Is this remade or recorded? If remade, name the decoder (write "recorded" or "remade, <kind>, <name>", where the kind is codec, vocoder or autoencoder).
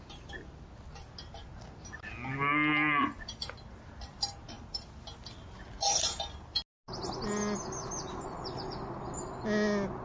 recorded